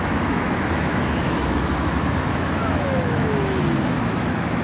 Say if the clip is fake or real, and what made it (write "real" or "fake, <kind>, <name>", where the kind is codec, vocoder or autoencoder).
fake, autoencoder, DAC-VAE